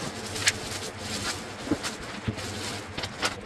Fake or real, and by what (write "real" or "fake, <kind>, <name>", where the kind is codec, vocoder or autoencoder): real